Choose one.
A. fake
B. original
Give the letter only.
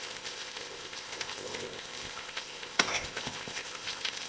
A